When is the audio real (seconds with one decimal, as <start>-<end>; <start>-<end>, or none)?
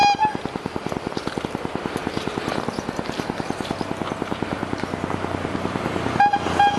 0.0-2.0; 6.1-6.8